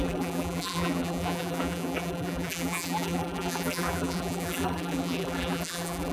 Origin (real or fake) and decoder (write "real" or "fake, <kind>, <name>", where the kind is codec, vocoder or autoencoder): fake, vocoder, BigVGAN v2